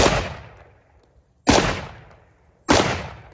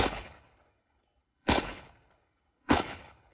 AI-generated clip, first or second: second